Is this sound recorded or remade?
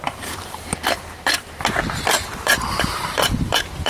remade